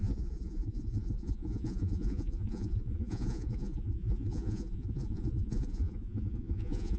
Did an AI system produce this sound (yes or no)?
yes